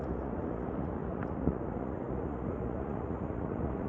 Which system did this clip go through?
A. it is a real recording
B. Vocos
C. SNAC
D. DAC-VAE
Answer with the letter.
B